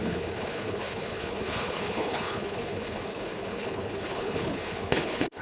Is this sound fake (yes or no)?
yes